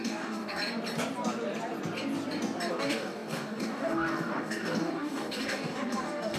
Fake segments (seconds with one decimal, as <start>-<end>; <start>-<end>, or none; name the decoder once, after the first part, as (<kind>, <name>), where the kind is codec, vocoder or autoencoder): 0.0-0.6 (codec, DAC); 2.7-6.4